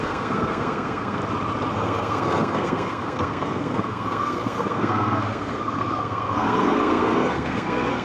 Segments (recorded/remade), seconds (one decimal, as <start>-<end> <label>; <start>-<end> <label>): 0.0-1.2 remade; 1.2-1.7 recorded; 1.7-8.0 remade